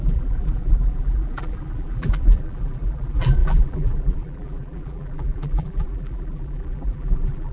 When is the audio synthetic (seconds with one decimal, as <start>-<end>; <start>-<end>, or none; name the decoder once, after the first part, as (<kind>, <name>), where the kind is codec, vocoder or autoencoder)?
0.0-7.5 (vocoder, BigVGAN v2)